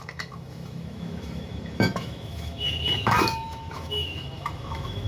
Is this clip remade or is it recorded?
remade